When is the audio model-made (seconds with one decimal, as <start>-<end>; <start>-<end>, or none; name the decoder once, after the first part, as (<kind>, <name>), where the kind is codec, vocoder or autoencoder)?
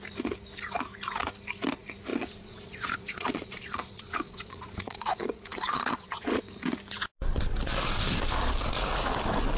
2.1-6.4 (vocoder, Vocos)